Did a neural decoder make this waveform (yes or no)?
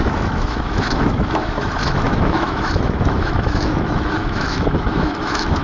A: yes